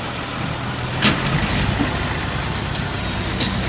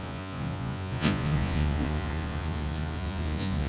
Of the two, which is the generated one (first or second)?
second